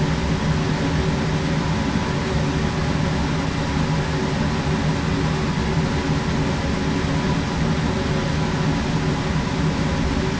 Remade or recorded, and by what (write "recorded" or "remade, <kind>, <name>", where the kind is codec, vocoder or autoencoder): recorded